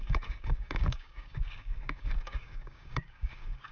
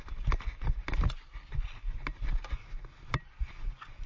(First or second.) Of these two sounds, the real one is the second